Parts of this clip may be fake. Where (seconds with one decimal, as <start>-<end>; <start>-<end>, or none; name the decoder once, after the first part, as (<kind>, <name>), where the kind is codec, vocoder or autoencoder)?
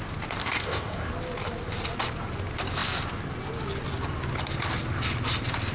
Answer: 0.4-1.1 (codec, ZipCodec)